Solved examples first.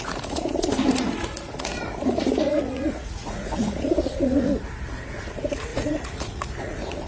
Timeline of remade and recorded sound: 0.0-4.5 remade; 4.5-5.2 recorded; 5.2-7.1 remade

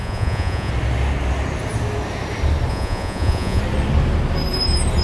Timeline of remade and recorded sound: 0.0-0.7 remade; 0.7-2.7 recorded; 2.7-3.6 remade; 3.6-5.0 recorded

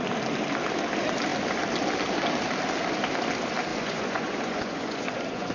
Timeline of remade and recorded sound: 0.0-3.7 recorded; 3.7-5.5 remade

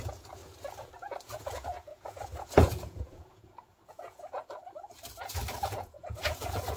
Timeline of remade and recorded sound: 0.0-0.4 remade; 0.4-1.3 recorded; 1.3-4.4 remade; 4.4-5.8 recorded; 5.8-6.8 remade